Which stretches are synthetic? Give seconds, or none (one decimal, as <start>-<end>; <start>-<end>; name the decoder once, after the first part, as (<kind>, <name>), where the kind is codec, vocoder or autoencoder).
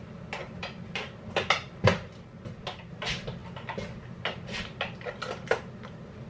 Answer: none